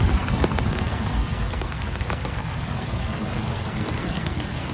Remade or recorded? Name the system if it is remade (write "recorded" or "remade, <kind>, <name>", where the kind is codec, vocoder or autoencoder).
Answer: remade, codec, SNAC